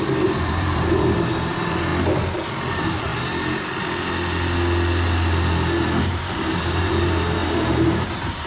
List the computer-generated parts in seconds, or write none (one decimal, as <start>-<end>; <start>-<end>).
0.0-1.9; 2.7-3.1; 6.0-8.5